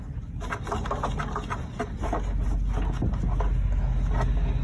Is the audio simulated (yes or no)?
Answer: no